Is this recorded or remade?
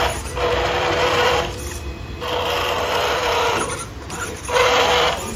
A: remade